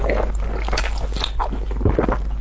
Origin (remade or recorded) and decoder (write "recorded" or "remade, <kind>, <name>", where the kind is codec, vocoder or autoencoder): recorded